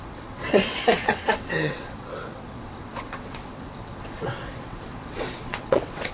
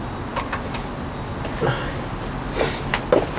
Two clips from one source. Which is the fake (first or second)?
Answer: first